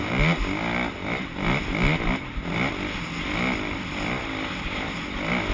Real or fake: real